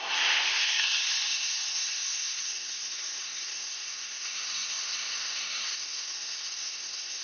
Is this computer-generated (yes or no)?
yes